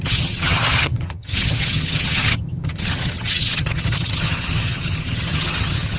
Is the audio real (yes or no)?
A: no